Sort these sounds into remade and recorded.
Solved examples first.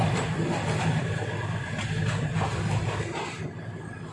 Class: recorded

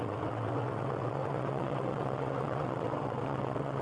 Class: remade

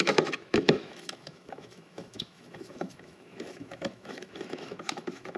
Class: remade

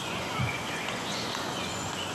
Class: remade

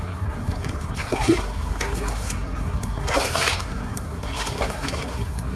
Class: remade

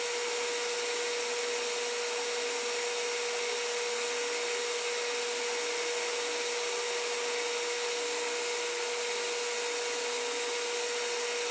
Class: recorded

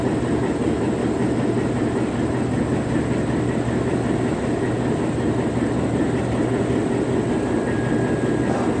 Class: recorded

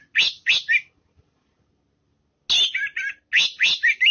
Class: recorded